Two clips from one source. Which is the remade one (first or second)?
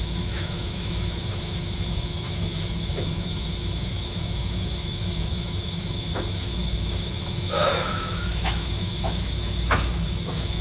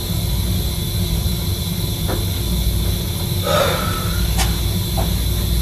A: first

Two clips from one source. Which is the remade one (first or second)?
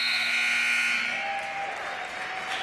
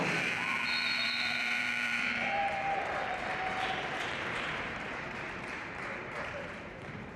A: second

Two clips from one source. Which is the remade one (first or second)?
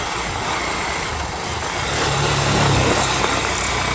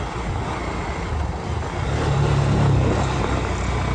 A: first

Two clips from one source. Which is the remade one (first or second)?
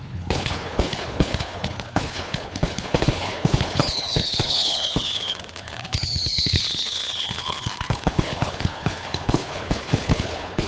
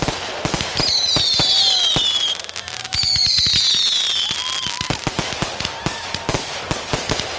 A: first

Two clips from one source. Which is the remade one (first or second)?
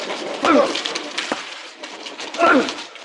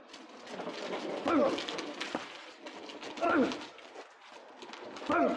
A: first